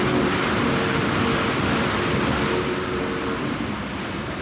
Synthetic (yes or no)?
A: no